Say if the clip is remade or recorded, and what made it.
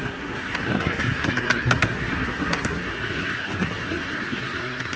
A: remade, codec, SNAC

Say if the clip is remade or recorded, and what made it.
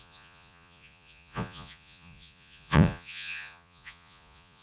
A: remade, vocoder, Vocos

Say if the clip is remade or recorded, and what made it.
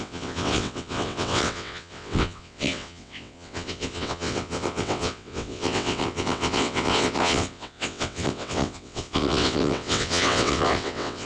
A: remade, vocoder, WaveNeXt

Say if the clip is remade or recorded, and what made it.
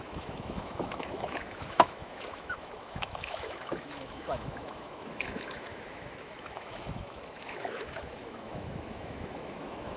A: remade, autoencoder, DAC-VAE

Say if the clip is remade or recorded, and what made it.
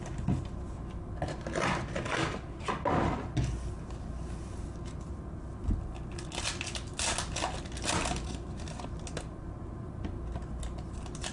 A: recorded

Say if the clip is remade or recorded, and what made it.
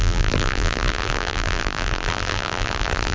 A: remade, vocoder, BigVGAN v2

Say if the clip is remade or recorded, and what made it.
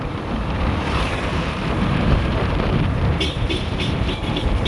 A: remade, vocoder, BigVGAN v2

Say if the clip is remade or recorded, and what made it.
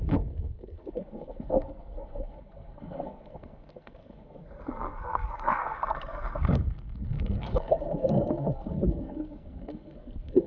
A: remade, codec, SNAC